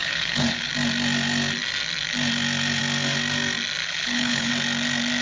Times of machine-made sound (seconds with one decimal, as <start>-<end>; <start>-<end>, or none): 0.0-0.7; 3.8-4.5